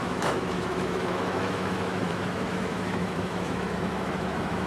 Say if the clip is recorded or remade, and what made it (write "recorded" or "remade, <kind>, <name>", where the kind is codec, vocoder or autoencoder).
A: remade, autoencoder, DAC-VAE